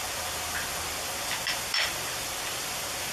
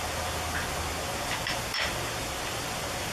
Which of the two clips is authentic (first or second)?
second